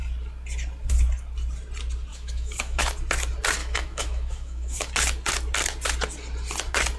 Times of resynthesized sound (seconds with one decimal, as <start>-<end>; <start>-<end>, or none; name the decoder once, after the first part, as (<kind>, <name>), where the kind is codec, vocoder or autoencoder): 2.1-2.8 (autoencoder, DAC-VAE); 3.6-4.9

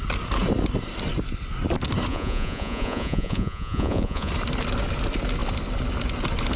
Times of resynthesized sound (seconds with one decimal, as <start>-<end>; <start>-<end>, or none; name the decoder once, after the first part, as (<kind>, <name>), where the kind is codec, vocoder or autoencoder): 2.1-4.3 (vocoder, Vocos)

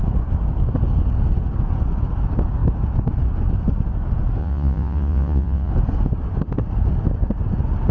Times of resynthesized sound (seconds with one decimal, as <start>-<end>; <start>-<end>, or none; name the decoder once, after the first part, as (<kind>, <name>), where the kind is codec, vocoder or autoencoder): 4.4-5.7 (vocoder, Vocos)

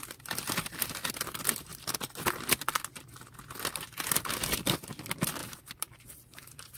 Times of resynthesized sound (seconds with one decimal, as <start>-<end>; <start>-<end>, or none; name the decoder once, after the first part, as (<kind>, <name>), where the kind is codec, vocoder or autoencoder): 5.4-6.8 (vocoder, BigVGAN v2)

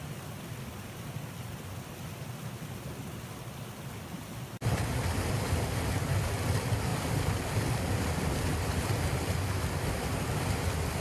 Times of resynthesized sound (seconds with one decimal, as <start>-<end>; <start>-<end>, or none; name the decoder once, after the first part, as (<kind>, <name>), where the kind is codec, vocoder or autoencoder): none

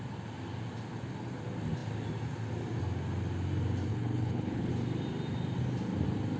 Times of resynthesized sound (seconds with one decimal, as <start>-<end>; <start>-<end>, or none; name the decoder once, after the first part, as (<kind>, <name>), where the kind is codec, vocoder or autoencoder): 3.9-4.7 (codec, HILCodec)

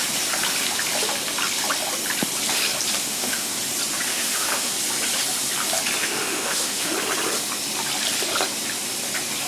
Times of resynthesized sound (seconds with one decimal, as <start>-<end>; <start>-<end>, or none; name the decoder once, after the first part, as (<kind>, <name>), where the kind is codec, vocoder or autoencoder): 3.0-3.5 (autoencoder, DAC-VAE); 4.1-4.7; 6.0-6.9

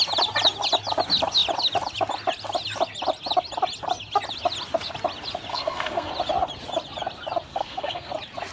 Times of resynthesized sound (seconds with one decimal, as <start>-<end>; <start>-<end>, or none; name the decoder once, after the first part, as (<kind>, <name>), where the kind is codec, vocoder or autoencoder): 5.5-6.1 (codec, SNAC); 7.5-8.1